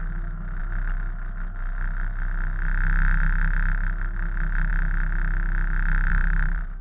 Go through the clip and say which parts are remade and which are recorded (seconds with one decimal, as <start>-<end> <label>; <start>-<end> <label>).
0.0-6.1 recorded; 6.1-6.8 remade